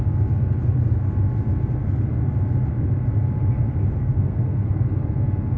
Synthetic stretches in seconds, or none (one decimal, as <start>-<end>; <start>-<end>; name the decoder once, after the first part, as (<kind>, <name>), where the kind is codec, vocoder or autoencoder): 3.8-4.7 (codec, SNAC)